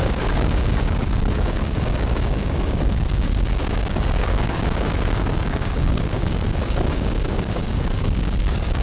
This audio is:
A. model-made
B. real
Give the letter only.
A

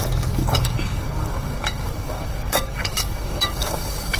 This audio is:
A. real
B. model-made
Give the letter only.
B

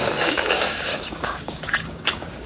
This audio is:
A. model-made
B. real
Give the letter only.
A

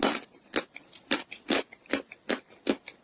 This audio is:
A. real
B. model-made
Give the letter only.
A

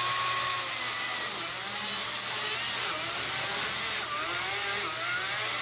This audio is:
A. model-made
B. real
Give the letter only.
B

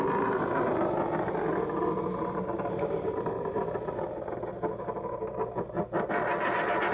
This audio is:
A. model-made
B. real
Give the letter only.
B